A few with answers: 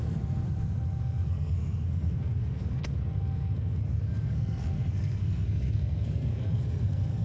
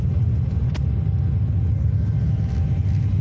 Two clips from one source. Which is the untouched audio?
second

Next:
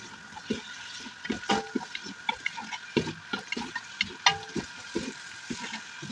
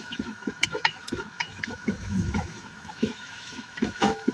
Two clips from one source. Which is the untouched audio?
first